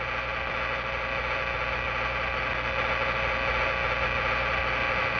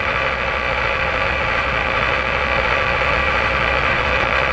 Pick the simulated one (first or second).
second